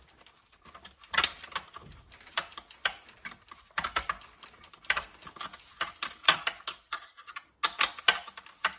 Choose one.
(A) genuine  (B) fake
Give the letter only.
A